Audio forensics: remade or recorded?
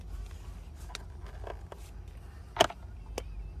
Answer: recorded